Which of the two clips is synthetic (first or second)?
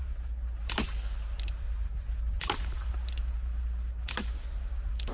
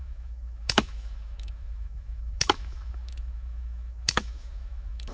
second